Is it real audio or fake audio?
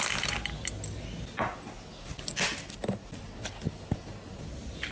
real